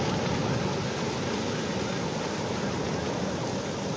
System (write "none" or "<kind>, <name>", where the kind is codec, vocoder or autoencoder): none